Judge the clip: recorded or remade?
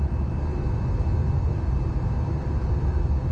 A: remade